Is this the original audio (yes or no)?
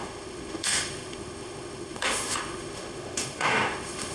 no